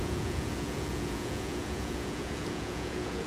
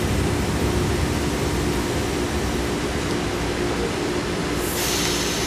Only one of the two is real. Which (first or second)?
second